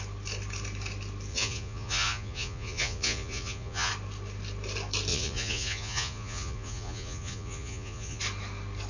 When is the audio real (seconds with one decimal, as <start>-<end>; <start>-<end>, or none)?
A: 0.0-1.3; 3.9-5.1; 8.2-8.9